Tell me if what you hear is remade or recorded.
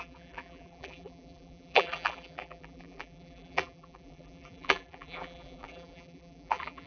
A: remade